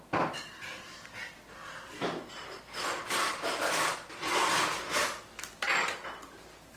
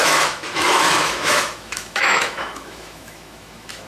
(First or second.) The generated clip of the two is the second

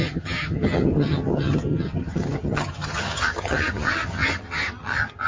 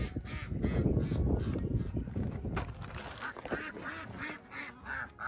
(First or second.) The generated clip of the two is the first